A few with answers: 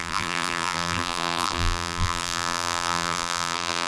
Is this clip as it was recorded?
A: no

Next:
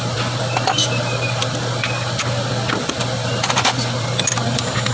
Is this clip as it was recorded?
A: yes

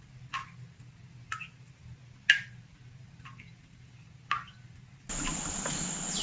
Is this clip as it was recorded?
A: yes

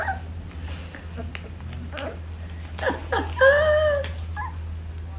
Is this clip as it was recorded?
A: yes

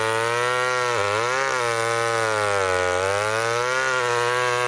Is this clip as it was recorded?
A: yes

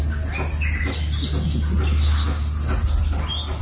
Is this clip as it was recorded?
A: yes